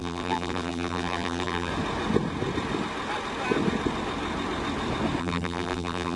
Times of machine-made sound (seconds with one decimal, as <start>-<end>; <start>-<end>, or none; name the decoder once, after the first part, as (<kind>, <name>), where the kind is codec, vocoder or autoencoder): 0.0-1.7 (vocoder, BigVGAN v2); 5.2-6.2